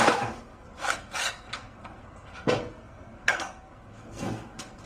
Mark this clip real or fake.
fake